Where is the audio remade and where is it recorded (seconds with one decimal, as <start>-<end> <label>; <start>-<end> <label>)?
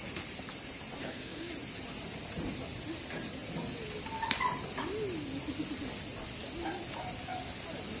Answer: 0.0-1.0 recorded; 1.0-1.5 remade; 1.5-8.0 recorded